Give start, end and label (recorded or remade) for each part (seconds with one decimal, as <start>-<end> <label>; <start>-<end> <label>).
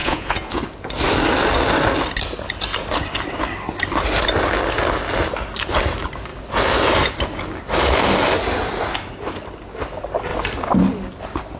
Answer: 0.0-0.6 remade; 0.6-11.6 recorded